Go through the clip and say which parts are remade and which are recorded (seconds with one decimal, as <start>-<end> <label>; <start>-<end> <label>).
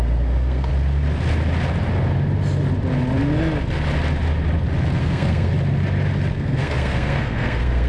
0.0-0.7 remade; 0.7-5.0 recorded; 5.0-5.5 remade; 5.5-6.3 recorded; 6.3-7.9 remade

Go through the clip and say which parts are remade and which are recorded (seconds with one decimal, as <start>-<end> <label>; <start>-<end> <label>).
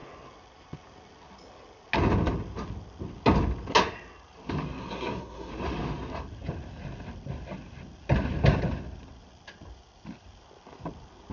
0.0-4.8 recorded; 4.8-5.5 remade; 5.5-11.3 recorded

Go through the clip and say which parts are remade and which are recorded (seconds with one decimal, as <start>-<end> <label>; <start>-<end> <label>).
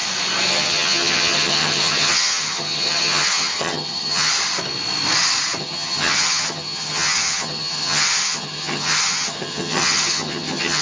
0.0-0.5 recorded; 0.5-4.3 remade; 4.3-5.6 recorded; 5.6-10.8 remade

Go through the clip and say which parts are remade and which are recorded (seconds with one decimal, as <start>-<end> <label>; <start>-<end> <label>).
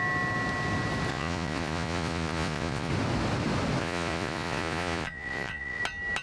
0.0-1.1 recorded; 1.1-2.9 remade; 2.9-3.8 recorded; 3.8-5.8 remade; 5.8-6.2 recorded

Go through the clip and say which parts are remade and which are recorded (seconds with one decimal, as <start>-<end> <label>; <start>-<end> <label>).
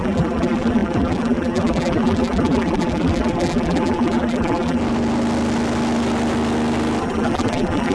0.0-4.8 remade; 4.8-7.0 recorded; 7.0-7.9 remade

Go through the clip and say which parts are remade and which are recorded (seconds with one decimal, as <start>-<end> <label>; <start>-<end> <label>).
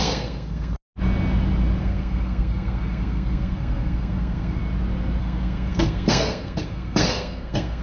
0.0-0.8 remade; 0.8-1.8 recorded; 1.8-4.6 remade; 4.6-5.2 recorded; 5.2-7.8 remade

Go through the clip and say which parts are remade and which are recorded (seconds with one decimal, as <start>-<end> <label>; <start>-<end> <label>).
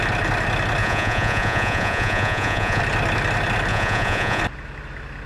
0.0-0.8 recorded; 0.8-2.8 remade; 2.8-3.7 recorded; 3.7-4.4 remade; 4.4-5.3 recorded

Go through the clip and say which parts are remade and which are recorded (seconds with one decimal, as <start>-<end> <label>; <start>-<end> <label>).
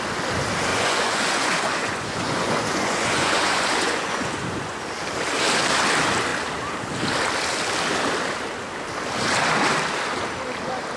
0.0-0.7 recorded; 0.7-4.8 remade; 4.8-11.0 recorded